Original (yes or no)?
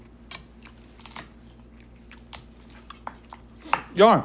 yes